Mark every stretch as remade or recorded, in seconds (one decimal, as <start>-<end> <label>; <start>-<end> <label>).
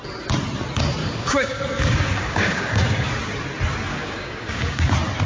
0.0-1.0 recorded; 1.0-3.1 remade; 3.1-3.9 recorded; 3.9-4.8 remade; 4.8-5.3 recorded